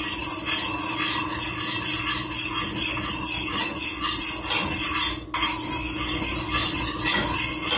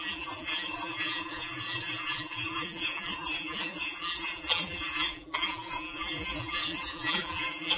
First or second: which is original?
first